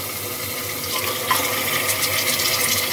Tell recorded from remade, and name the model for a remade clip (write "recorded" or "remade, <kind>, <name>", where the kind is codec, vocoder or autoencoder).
recorded